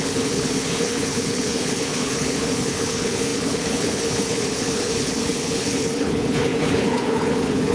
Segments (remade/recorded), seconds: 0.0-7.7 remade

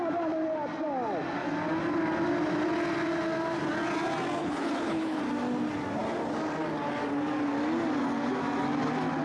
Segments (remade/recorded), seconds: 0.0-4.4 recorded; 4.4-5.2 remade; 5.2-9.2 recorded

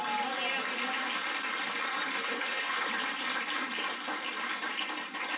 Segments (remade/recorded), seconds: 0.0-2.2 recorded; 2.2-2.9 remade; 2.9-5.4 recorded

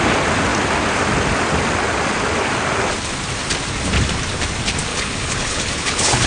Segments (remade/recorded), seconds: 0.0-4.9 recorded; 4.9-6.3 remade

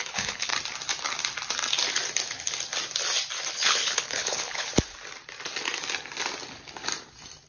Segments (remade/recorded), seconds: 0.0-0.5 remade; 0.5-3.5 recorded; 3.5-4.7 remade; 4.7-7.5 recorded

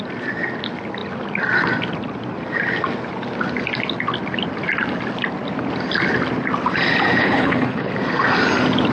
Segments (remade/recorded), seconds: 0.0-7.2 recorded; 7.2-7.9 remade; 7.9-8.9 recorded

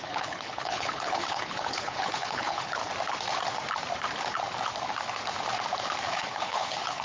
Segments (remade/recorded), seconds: 0.0-2.8 remade; 2.8-6.1 recorded; 6.1-7.0 remade